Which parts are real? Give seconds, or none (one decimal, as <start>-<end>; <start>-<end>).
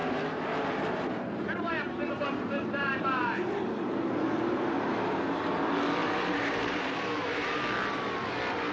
3.5-4.9; 5.5-6.0; 7.6-8.7